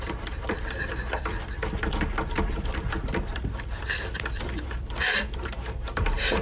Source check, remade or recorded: remade